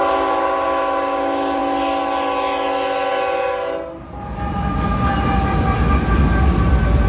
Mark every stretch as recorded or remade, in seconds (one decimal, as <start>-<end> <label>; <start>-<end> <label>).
0.0-7.1 recorded